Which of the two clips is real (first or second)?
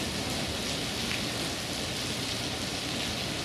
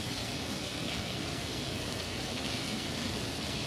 first